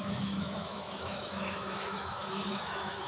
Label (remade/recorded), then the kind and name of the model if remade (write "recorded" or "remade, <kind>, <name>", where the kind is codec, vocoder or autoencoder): remade, autoencoder, DAC-VAE